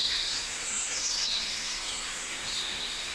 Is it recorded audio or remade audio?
remade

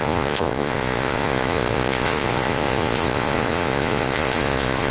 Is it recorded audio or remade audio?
remade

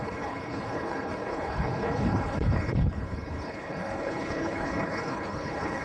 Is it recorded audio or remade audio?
remade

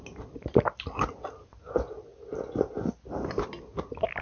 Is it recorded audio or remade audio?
recorded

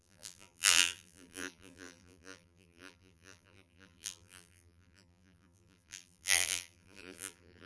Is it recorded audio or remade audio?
remade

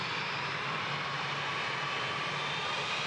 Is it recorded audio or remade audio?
recorded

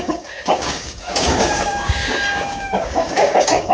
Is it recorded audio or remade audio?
remade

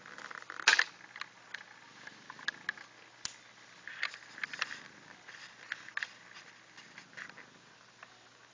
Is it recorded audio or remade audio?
recorded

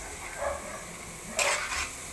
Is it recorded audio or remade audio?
recorded